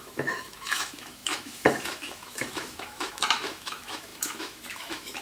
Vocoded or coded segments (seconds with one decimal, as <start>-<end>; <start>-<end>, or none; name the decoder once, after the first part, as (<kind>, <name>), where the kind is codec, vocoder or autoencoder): 0.0-5.2 (autoencoder, DAC-VAE)